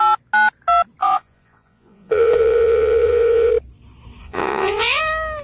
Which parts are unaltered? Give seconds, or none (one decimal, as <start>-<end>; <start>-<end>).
0.0-1.0; 3.5-4.2; 5.0-5.4